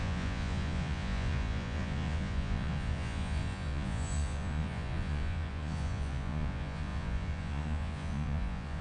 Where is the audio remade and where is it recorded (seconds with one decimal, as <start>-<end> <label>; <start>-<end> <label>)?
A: 0.0-8.8 remade